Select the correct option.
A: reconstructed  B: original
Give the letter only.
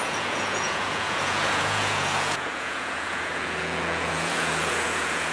A